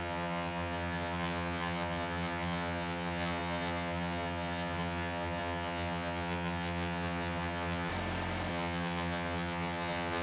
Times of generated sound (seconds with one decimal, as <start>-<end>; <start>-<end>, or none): 0.0-7.9; 8.5-10.2